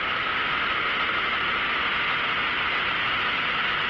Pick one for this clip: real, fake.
real